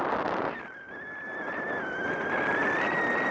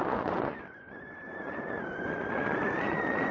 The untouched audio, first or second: first